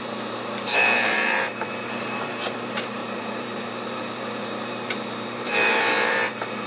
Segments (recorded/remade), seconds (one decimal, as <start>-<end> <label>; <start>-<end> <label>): 0.0-6.7 remade